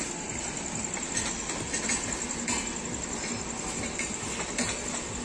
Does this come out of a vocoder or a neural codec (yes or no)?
no